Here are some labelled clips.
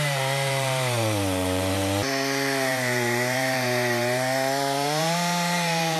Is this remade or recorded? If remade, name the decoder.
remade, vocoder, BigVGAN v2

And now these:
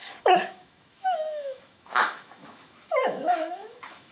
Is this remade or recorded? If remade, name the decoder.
remade, autoencoder, DAC-VAE